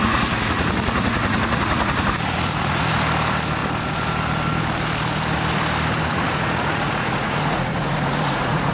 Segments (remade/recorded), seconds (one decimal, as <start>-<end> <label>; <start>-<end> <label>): 0.0-2.9 remade; 2.9-6.1 recorded; 6.1-8.7 remade